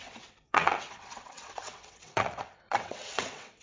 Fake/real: fake